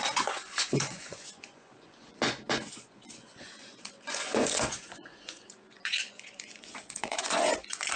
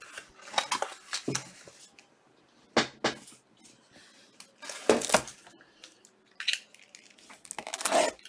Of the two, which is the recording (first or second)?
second